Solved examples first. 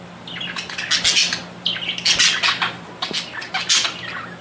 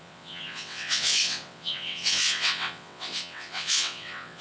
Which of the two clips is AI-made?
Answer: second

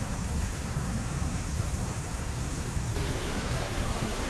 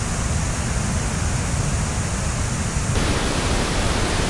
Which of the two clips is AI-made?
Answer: first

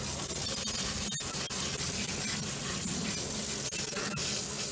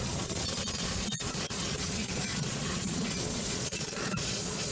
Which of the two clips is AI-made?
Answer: second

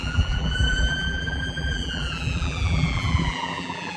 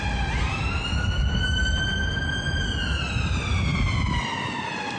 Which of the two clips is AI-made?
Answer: first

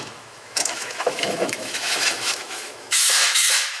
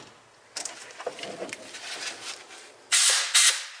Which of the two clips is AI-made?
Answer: first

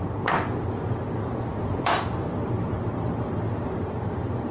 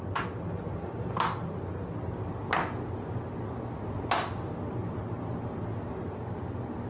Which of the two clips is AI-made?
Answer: first